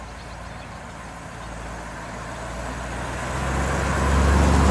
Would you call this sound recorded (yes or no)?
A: yes